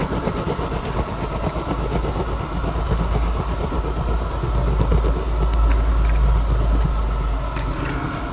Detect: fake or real real